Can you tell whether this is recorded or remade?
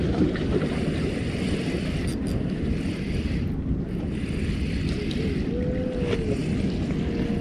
recorded